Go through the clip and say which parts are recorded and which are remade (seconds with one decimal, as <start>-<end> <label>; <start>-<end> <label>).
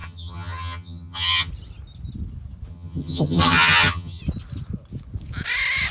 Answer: 0.0-1.5 remade; 1.5-2.7 recorded; 2.7-4.2 remade; 4.2-5.9 recorded